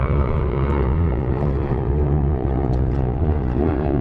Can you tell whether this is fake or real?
fake